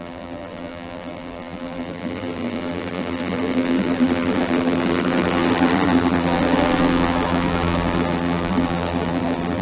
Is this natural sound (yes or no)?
no